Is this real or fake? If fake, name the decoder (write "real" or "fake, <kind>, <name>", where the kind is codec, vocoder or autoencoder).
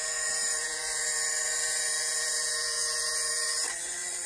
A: fake, vocoder, Vocos